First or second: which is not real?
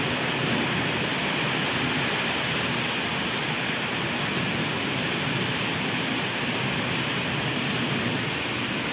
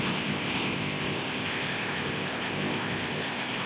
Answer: second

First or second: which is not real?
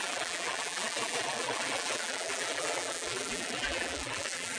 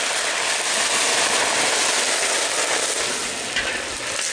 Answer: first